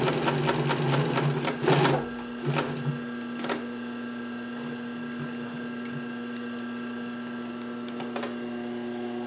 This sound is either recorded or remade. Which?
recorded